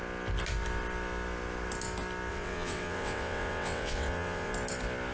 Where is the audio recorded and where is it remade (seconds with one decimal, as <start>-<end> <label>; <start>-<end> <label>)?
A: 0.0-2.3 recorded; 2.3-4.5 remade; 4.5-5.1 recorded